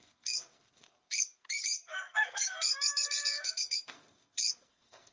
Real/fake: fake